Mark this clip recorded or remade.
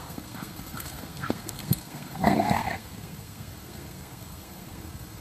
remade